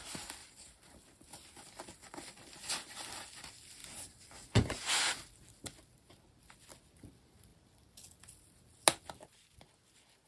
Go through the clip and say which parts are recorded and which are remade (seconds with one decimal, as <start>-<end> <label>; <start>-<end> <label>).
0.0-0.4 recorded; 0.4-3.1 remade; 3.1-3.8 recorded; 3.8-4.9 remade; 4.9-10.3 recorded